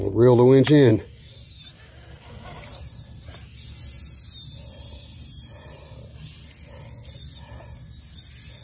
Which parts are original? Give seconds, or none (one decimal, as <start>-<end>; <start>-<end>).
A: 0.0-8.6